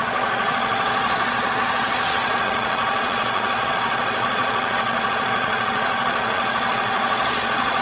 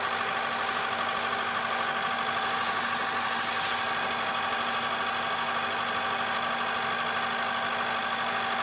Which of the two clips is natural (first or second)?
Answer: second